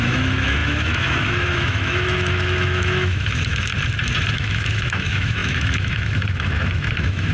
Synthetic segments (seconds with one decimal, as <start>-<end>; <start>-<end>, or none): 0.0-3.7; 4.3-7.3